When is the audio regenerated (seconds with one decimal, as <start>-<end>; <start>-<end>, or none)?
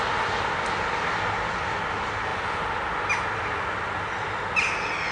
none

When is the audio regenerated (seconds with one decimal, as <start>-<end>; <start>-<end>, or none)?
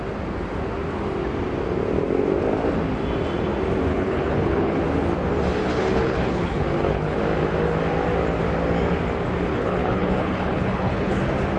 3.9-4.8; 5.6-7.2; 9.5-11.2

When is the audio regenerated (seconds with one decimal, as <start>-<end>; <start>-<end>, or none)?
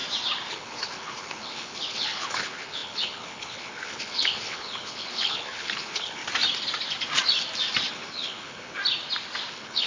0.5-6.2; 7.9-8.8; 9.5-9.9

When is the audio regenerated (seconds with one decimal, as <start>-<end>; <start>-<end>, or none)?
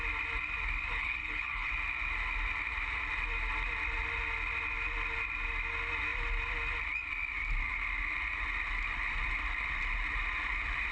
0.9-1.7